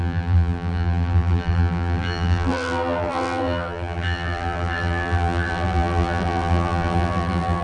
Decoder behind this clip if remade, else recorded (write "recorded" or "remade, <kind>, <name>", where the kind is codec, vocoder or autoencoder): remade, vocoder, BigVGAN v2